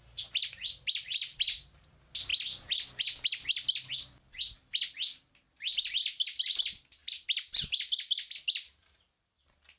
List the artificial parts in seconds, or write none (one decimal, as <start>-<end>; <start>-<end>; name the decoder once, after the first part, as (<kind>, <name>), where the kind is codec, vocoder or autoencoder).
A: none